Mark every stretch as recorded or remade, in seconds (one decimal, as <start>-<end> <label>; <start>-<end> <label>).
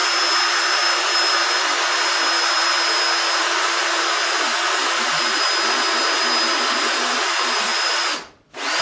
0.0-7.7 recorded; 7.7-8.4 remade; 8.4-8.8 recorded